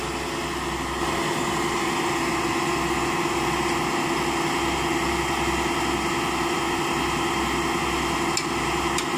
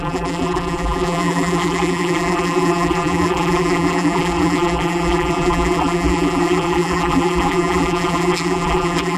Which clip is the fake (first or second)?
second